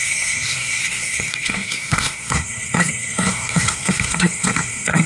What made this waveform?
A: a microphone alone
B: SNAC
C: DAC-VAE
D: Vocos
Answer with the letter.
B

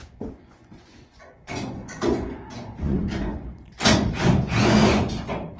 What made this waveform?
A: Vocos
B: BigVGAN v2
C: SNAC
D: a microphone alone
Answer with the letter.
A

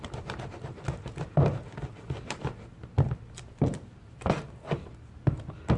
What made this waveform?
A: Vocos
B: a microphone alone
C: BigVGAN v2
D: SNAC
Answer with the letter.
B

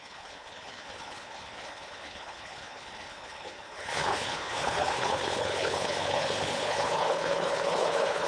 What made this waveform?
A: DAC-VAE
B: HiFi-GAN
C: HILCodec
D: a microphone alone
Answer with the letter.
C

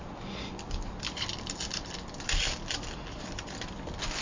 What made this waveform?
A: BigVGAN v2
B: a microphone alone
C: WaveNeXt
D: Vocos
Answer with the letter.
B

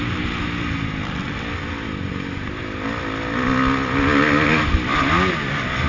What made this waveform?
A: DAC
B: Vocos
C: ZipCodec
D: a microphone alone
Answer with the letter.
D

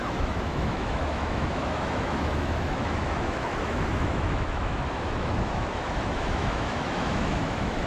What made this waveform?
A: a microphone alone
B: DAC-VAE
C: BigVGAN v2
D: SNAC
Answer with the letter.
B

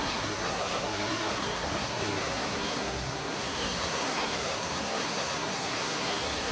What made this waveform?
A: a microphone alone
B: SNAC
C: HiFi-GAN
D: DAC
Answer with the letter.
B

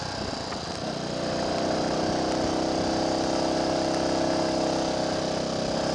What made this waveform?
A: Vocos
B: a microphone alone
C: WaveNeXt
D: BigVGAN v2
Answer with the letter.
B